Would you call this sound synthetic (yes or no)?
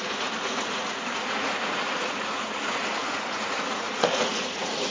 yes